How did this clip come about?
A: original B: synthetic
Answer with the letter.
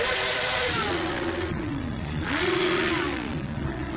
B